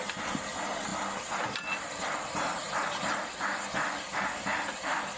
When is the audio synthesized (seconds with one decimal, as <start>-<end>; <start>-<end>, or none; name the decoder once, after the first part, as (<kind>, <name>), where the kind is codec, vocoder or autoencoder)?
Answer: none